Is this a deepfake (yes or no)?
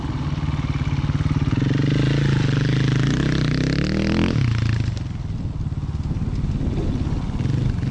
no